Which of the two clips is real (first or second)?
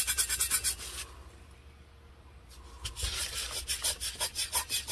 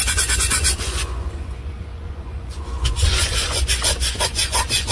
first